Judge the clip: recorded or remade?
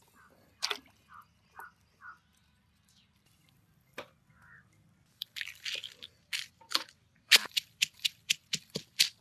remade